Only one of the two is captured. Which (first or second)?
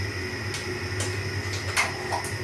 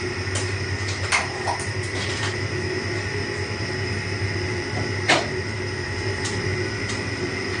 first